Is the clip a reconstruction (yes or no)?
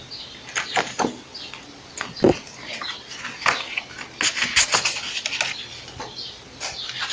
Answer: no